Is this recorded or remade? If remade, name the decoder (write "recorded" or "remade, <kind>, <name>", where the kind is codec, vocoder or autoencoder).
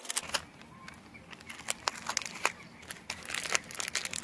recorded